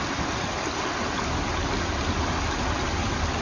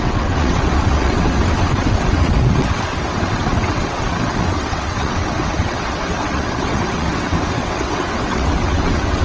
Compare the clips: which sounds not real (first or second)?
second